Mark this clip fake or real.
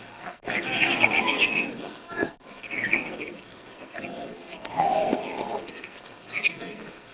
fake